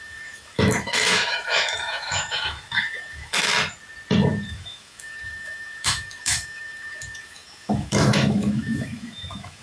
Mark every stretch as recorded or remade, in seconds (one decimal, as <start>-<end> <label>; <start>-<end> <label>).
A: 0.0-3.5 remade; 3.5-4.5 recorded; 4.5-9.6 remade